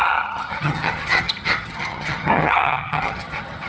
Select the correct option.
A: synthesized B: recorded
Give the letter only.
A